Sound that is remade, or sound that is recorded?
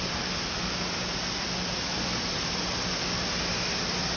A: recorded